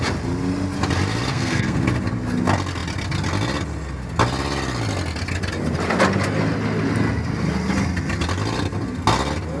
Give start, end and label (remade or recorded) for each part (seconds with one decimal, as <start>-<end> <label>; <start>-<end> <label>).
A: 0.0-1.3 recorded; 1.3-1.8 remade; 1.8-9.6 recorded